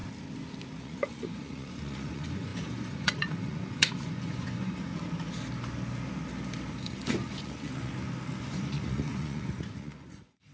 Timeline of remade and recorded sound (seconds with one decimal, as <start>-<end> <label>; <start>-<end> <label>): 0.0-0.8 recorded; 0.8-4.9 remade; 4.9-6.8 recorded; 6.8-7.9 remade; 7.9-8.4 recorded; 8.4-10.5 remade

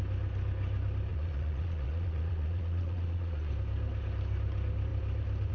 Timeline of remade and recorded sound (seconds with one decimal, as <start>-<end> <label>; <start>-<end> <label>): 0.0-1.1 recorded; 1.1-3.5 remade; 3.5-5.5 recorded

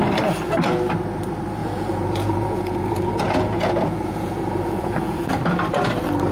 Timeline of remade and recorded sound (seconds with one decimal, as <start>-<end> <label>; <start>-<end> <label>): 0.0-1.6 recorded; 1.6-5.3 remade; 5.3-6.3 recorded